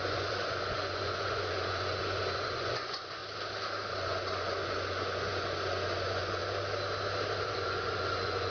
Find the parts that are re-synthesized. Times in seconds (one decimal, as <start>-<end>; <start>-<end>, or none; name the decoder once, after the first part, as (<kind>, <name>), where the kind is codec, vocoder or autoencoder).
0.0-3.2 (vocoder, Vocos); 3.9-6.4; 7.5-8.5